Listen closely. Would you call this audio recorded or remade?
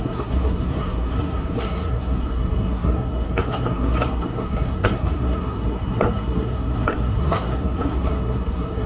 remade